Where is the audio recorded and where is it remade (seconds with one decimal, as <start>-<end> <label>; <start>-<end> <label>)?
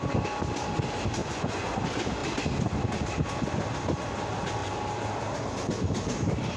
0.0-1.2 recorded; 1.2-1.7 remade; 1.7-6.6 recorded